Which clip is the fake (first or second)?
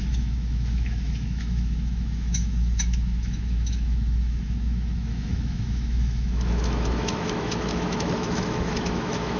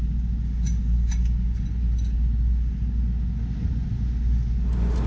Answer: first